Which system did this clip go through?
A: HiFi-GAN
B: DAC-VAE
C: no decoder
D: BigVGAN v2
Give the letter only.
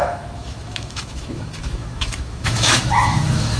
B